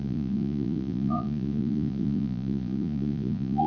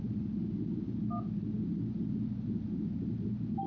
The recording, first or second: second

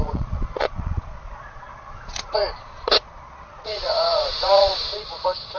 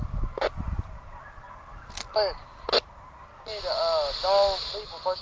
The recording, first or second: second